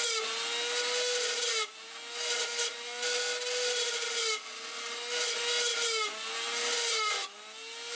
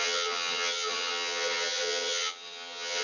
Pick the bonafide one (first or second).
first